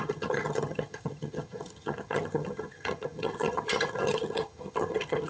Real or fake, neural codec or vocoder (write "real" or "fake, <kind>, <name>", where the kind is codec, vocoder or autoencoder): fake, vocoder, HiFi-GAN